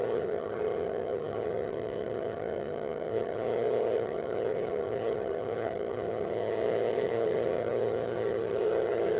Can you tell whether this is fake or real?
fake